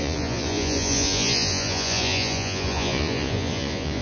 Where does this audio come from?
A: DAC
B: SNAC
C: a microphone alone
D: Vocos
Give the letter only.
D